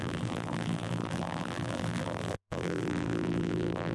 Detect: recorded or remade remade